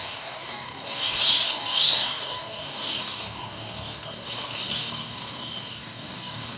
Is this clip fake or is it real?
fake